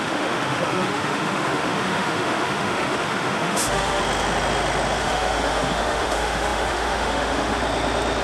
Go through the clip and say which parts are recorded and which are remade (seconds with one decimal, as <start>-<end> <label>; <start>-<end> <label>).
0.0-4.0 remade; 4.0-5.0 recorded; 5.0-7.6 remade; 7.6-8.2 recorded

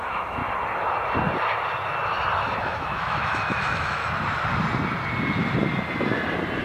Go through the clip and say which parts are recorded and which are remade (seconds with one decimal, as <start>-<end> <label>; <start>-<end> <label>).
0.0-0.4 remade; 0.4-2.6 recorded; 2.6-4.0 remade; 4.0-6.6 recorded

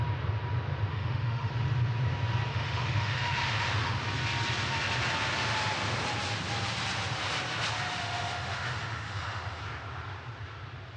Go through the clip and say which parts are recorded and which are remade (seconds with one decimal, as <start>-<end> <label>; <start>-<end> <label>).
0.0-0.9 recorded; 0.9-1.5 remade; 1.5-2.5 recorded; 2.5-4.0 remade; 4.0-8.0 recorded; 8.0-9.6 remade; 9.6-11.0 recorded

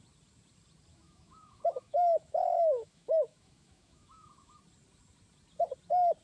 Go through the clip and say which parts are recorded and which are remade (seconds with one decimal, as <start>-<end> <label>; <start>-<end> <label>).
0.0-0.9 recorded; 0.9-4.6 remade; 4.6-6.2 recorded

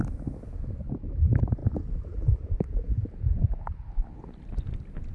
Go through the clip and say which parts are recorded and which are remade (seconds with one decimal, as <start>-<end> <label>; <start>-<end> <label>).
0.0-5.1 recorded

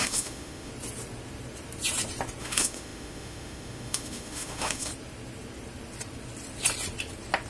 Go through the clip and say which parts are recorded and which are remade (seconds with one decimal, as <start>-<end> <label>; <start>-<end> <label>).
0.0-0.7 remade; 0.7-2.4 recorded; 2.4-4.9 remade; 4.9-7.5 recorded